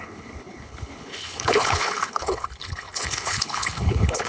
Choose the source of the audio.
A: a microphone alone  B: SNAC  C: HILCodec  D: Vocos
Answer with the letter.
C